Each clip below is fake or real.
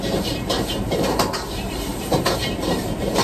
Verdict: fake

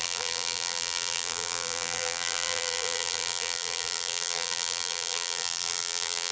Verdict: fake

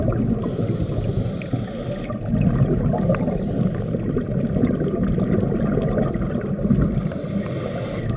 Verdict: real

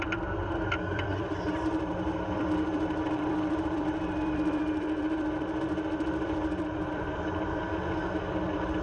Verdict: fake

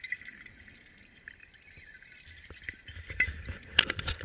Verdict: fake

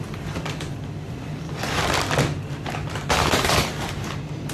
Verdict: fake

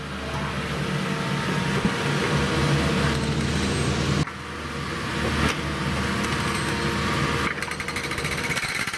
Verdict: real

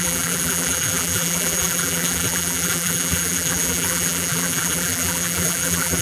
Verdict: fake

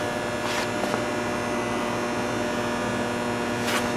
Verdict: real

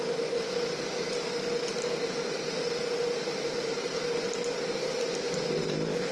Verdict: real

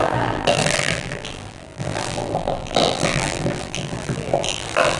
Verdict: fake